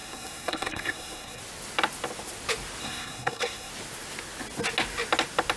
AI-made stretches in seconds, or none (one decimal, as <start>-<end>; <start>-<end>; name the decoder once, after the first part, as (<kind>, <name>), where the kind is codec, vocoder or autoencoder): 0.0-1.4 (codec, SNAC); 2.8-3.7